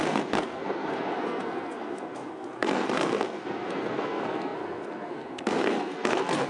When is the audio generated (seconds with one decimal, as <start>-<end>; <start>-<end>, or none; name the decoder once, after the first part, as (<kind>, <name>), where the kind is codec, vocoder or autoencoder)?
0.0-6.5 (codec, SNAC)